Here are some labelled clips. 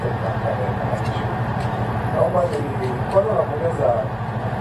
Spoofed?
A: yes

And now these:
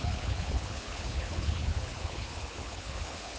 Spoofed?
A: yes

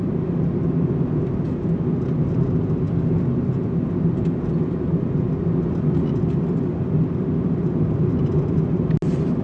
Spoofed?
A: no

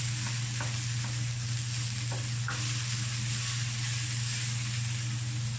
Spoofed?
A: no